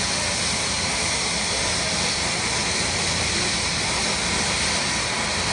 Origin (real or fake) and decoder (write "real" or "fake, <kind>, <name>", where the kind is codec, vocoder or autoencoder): real